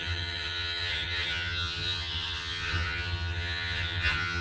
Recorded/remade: remade